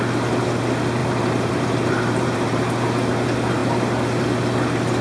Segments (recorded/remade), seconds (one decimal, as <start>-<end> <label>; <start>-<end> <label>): 0.0-1.0 recorded; 1.0-2.7 remade; 2.7-5.0 recorded